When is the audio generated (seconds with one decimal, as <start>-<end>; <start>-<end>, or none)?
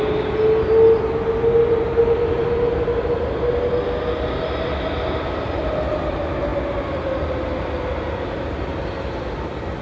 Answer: none